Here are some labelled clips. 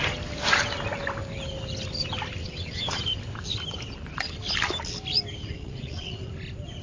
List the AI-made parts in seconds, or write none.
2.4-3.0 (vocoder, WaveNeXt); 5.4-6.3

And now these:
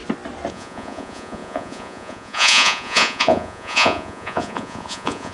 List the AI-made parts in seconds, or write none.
0.5-5.3 (vocoder, Vocos)

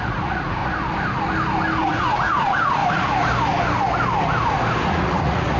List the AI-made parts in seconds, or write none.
0.0-0.6 (vocoder, Vocos); 1.8-2.8; 4.9-5.6

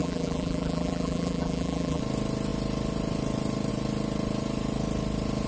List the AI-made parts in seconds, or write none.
0.0-2.0 (vocoder, BigVGAN v2)

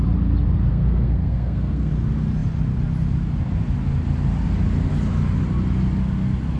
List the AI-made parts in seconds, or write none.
0.7-1.9 (codec, SNAC)

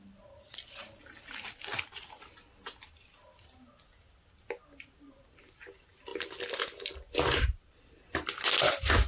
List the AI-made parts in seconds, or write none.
6.1-7.1 (vocoder, BigVGAN v2)

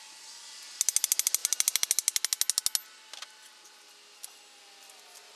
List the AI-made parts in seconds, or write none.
none

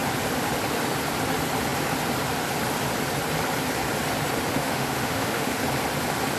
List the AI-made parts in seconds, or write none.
4.5-5.6 (autoencoder, DAC-VAE)